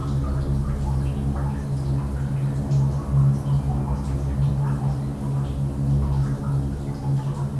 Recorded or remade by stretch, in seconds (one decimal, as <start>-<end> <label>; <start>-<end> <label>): 0.0-7.6 recorded